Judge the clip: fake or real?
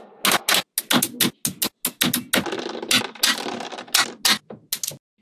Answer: real